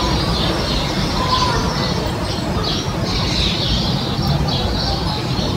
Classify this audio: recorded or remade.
recorded